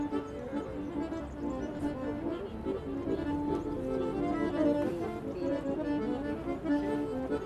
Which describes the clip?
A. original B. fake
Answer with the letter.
A